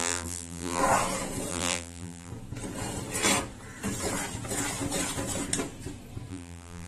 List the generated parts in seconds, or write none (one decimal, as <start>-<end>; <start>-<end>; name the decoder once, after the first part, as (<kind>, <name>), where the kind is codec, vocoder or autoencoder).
0.0-0.8 (vocoder, BigVGAN v2); 1.5-2.3; 6.3-6.9